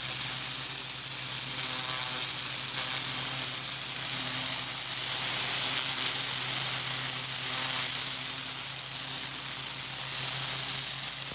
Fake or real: real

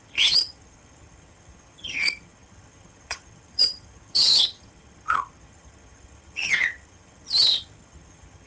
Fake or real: fake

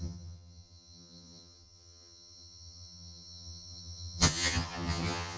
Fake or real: fake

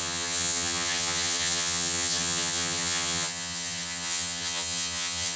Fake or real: fake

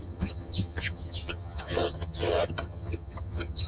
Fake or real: fake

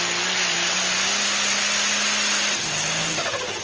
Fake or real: real